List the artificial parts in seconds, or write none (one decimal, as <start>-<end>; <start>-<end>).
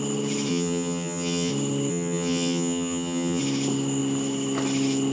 0.5-1.5; 1.9-3.4